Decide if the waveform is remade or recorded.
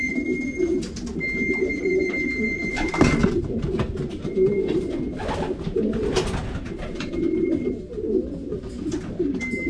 recorded